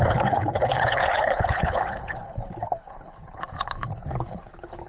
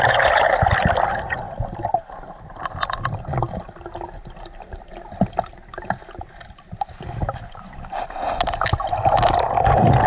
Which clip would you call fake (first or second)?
first